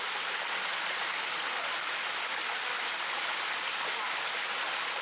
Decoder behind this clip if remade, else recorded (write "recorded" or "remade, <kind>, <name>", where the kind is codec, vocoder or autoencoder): recorded